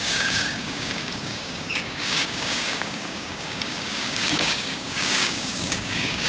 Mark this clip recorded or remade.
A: remade